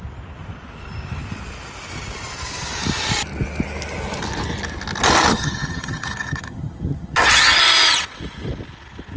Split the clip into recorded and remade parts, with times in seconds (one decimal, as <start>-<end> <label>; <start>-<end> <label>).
0.0-5.3 recorded; 5.3-7.6 remade; 7.6-9.2 recorded